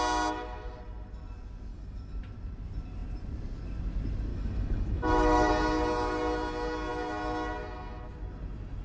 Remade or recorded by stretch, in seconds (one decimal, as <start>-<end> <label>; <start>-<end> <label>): 0.0-1.7 recorded; 1.7-2.2 remade; 2.2-4.3 recorded; 4.3-5.5 remade; 5.5-8.8 recorded